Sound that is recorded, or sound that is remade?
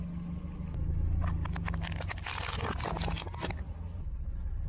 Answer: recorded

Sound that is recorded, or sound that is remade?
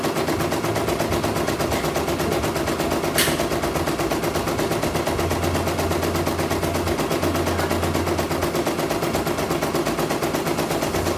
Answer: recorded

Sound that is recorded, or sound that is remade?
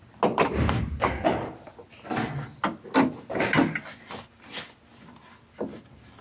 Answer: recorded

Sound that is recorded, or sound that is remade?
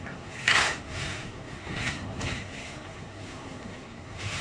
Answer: remade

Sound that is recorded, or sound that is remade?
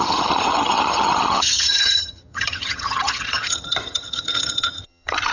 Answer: remade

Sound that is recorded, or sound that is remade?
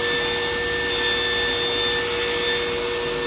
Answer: recorded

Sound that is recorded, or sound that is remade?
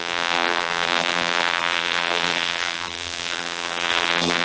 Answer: remade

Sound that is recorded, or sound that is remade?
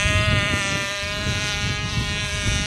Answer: remade